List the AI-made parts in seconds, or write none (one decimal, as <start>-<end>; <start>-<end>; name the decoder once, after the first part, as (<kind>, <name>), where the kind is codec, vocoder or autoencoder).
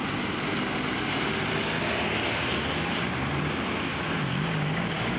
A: none